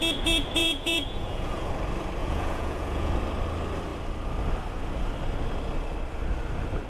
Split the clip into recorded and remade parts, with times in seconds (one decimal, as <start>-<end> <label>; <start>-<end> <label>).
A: 0.0-0.6 recorded; 0.6-1.7 remade; 1.7-2.2 recorded; 2.2-3.1 remade; 3.1-6.9 recorded

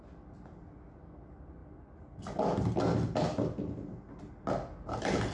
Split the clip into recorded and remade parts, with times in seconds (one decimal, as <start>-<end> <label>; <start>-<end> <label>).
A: 0.0-5.3 recorded

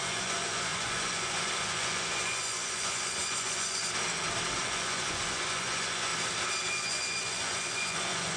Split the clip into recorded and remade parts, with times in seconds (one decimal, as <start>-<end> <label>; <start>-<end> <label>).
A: 0.0-3.8 remade; 3.8-4.6 recorded; 4.6-6.1 remade; 6.1-6.7 recorded; 6.7-8.4 remade